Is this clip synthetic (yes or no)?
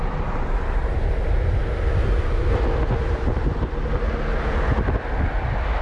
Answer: no